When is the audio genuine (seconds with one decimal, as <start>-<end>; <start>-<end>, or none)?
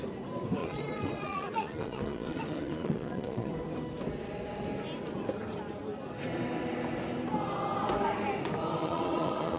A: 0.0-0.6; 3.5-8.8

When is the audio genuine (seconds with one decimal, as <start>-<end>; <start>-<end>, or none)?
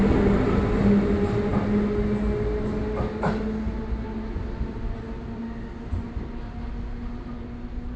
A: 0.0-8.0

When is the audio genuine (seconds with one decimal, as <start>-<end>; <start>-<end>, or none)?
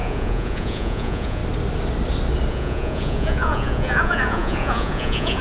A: 1.4-2.5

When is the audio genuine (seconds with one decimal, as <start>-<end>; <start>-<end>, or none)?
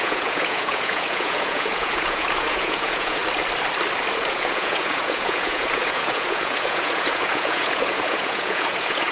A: 3.2-4.3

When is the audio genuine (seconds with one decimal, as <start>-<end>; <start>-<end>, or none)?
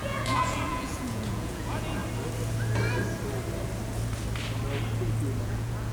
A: 2.0-5.4